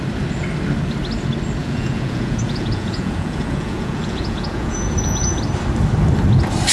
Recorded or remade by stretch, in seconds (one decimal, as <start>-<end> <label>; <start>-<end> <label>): 0.0-1.6 recorded; 1.6-5.4 remade; 5.4-6.7 recorded